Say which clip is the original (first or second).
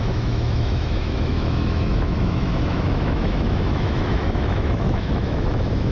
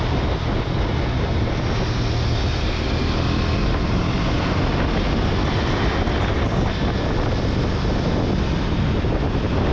second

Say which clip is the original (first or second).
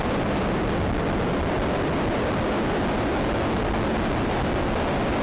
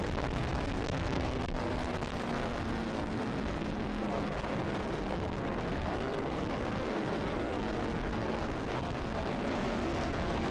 first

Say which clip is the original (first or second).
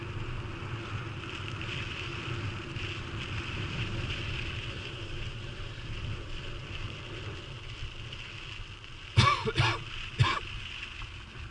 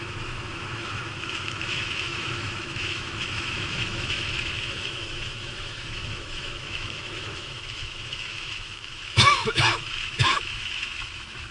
first